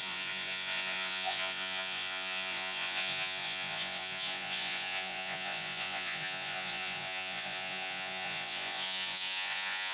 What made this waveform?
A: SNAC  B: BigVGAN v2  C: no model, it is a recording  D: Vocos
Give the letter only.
D